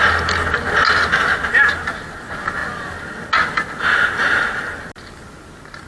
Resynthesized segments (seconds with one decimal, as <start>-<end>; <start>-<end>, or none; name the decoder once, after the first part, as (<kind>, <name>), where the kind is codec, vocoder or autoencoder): none